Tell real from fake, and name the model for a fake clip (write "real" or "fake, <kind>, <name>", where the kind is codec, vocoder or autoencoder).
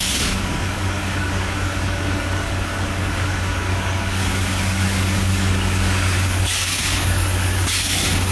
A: fake, codec, DAC